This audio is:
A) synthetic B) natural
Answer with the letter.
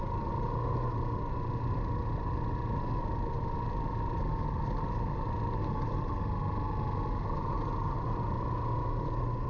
B